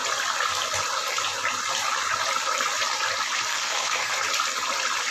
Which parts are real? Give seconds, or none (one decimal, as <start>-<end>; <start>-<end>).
0.0-3.5; 4.2-5.1